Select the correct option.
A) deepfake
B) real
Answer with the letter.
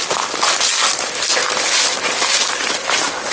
B